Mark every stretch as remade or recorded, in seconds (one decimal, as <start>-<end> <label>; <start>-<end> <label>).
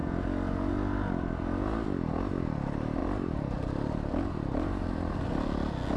0.0-3.0 recorded; 3.0-5.1 remade; 5.1-6.0 recorded